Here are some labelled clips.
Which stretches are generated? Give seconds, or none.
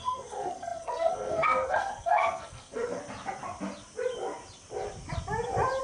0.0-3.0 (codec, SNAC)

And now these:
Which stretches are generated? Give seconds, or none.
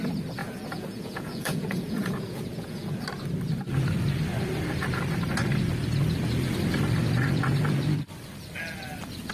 0.4-3.0 (vocoder, Vocos)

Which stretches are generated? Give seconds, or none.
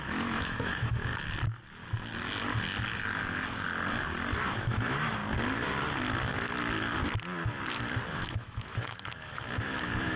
0.0-1.1 (autoencoder, DAC-VAE); 4.5-5.2; 8.1-10.2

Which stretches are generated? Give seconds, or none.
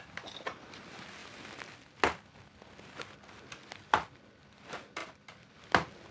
none